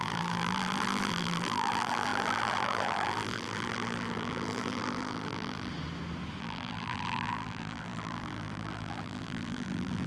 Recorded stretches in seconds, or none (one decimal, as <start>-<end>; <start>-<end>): 5.7-6.4